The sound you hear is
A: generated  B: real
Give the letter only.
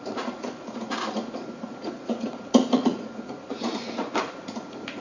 A